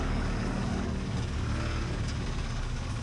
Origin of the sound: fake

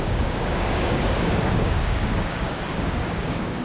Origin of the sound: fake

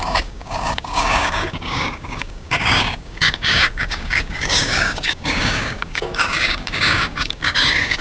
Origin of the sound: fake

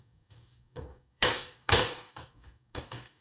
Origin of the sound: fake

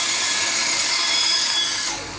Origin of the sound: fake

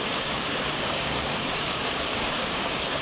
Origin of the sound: fake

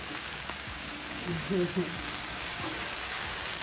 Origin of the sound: fake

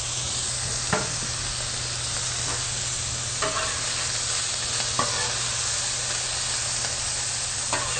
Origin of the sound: real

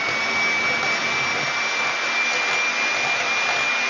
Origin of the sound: real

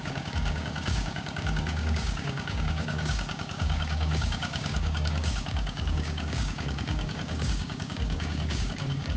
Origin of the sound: fake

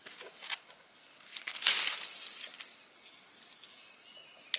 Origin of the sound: real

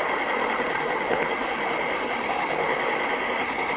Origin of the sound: real